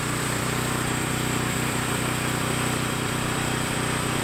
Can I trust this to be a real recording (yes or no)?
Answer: no